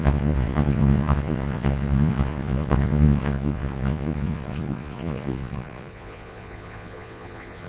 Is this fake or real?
fake